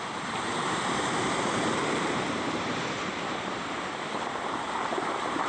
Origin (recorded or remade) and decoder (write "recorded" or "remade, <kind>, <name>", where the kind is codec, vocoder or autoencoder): remade, vocoder, BigVGAN v2